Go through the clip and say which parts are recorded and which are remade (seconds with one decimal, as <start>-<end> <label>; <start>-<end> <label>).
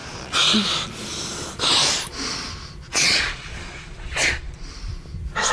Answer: 0.0-0.9 remade; 0.9-2.9 recorded; 2.9-4.7 remade; 4.7-5.5 recorded